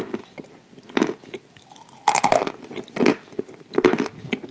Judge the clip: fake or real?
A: real